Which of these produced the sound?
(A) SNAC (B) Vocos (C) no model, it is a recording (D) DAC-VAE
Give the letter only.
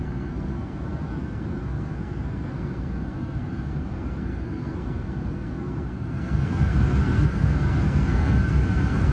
A